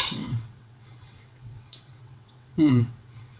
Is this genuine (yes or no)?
no